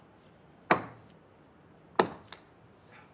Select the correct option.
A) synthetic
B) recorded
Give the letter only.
B